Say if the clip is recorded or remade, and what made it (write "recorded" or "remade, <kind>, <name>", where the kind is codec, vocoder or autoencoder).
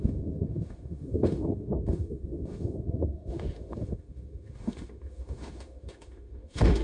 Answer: remade, autoencoder, DAC-VAE